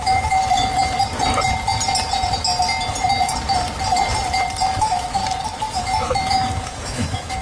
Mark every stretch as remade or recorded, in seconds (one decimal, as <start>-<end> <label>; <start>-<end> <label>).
0.0-0.4 remade; 0.4-4.8 recorded; 4.8-5.2 remade; 5.2-5.7 recorded; 5.7-7.4 remade